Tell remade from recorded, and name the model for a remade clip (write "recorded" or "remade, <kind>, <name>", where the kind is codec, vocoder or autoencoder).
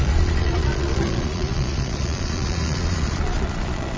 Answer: remade, vocoder, Vocos